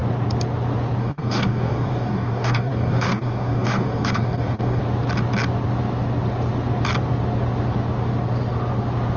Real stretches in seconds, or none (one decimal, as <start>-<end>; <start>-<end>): 0.0-1.0; 4.8-9.2